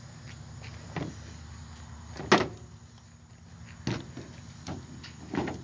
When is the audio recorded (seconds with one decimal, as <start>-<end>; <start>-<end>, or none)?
0.0-5.6